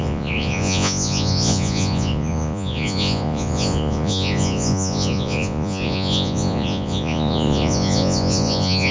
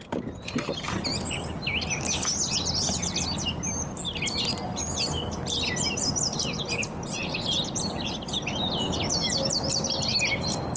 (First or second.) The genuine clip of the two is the second